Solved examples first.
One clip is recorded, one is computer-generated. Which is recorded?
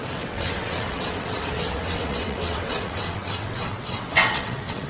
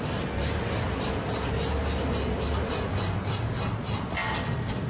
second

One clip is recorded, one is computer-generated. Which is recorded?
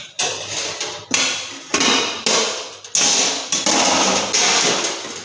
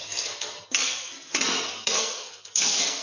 first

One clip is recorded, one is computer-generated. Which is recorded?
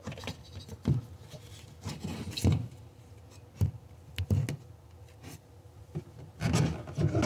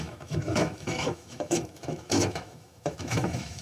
first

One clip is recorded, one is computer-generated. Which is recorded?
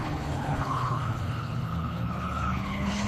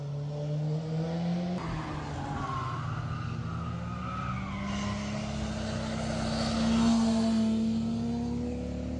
second